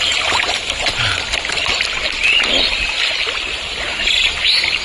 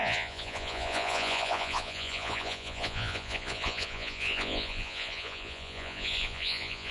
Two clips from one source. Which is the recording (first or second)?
first